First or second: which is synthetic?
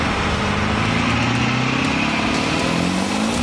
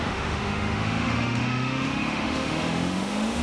second